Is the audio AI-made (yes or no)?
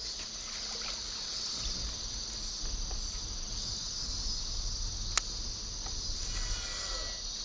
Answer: no